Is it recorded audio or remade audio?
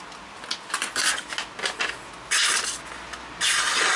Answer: recorded